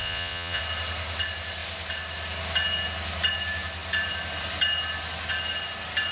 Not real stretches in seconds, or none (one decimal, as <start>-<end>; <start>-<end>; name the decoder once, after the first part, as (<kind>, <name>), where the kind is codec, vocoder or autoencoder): 0.0-0.6 (vocoder, Vocos)

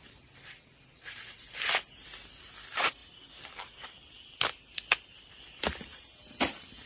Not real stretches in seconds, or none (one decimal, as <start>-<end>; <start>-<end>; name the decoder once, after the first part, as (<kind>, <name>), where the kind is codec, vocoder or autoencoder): none

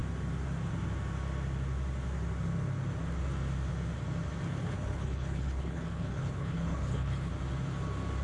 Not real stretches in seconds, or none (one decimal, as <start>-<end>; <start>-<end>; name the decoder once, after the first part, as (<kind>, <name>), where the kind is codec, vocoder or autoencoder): 4.6-7.3 (codec, HILCodec)

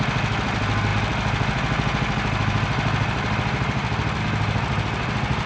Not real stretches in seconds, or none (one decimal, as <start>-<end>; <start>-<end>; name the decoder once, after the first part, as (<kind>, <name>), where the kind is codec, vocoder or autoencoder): none

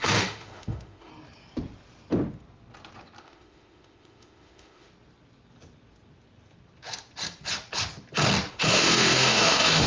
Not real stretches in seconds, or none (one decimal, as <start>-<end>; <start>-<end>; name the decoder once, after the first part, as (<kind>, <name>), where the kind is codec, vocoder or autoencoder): 0.0-1.1 (autoencoder, DAC-VAE); 3.2-4.9; 8.5-9.9

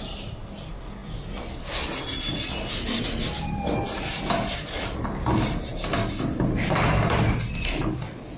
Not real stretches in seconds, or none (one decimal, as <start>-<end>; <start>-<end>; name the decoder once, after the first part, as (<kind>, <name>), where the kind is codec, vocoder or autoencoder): none

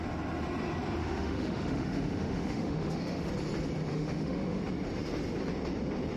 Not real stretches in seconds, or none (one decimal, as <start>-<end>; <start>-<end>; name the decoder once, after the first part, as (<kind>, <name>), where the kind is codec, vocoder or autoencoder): 1.0-3.3 (autoencoder, DAC-VAE); 3.9-4.6

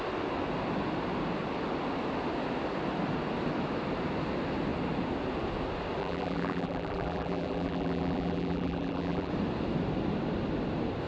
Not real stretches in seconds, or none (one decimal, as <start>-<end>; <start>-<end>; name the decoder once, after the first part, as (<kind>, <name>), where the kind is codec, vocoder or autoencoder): 6.0-9.3 (vocoder, BigVGAN v2)